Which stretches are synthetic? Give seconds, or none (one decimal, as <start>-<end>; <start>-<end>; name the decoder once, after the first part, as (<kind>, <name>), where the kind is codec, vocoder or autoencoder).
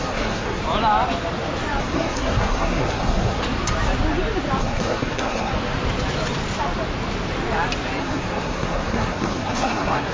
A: 0.0-0.6 (codec, SNAC); 1.8-3.4; 4.6-5.5; 8.0-10.1